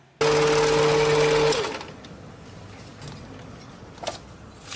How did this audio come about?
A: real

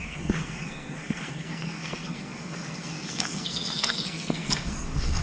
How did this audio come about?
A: fake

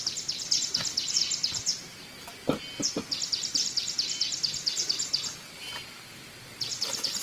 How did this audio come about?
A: real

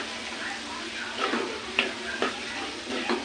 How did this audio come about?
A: real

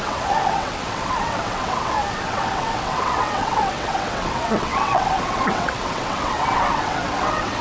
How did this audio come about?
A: fake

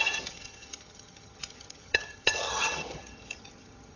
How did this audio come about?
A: fake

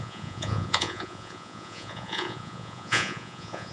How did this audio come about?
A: fake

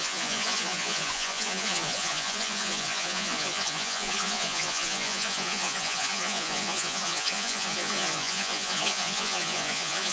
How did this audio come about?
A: fake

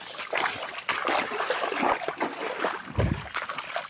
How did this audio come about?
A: real